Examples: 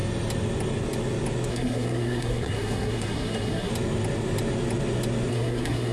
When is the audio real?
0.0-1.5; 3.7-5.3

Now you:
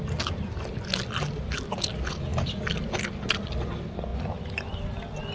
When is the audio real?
0.0-5.3